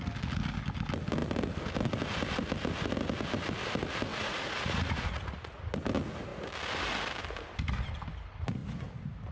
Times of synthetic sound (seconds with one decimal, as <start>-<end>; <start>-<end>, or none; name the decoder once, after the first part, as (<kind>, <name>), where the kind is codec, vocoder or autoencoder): 4.1-5.6 (vocoder, Vocos)